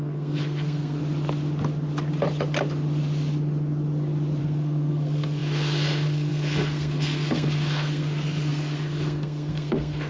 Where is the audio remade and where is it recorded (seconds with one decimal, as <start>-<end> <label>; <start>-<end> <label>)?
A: 0.0-1.0 remade; 1.0-4.4 recorded; 4.4-10.1 remade